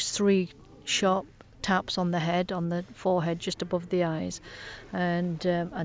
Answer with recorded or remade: recorded